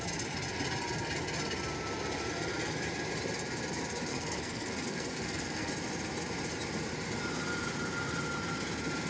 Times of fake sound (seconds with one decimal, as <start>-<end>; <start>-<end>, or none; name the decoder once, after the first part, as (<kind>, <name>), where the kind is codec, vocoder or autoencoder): 4.1-5.7 (codec, SNAC)